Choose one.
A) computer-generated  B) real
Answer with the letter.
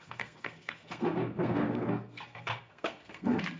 A